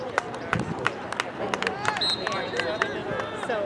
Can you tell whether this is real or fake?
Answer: real